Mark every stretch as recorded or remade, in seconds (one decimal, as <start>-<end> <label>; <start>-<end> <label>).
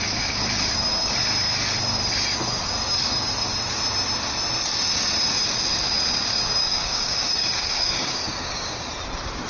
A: 0.0-6.6 recorded; 6.6-8.9 remade; 8.9-9.5 recorded